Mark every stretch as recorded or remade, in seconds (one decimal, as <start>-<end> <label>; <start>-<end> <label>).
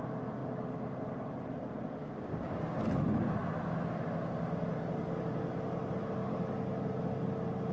0.0-2.0 recorded; 2.0-2.6 remade; 2.6-7.7 recorded